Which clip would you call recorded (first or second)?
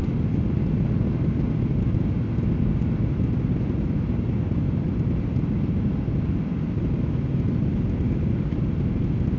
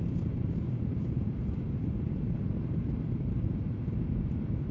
first